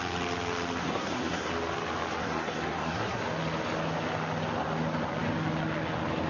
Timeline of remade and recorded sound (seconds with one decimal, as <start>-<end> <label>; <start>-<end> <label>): 0.0-0.8 recorded; 0.8-1.5 remade; 1.5-2.2 recorded; 2.2-3.2 remade; 3.2-6.3 recorded